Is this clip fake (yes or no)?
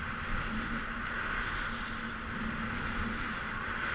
no